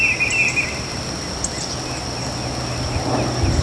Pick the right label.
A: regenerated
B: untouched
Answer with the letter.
B